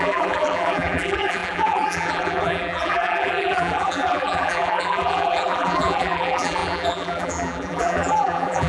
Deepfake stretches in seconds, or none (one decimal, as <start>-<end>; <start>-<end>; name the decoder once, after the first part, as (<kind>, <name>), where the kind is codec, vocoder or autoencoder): 0.0-8.7 (vocoder, BigVGAN v2)